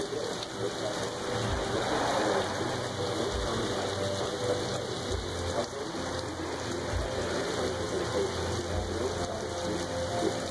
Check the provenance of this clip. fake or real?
real